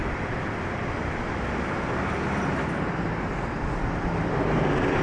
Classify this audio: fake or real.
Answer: real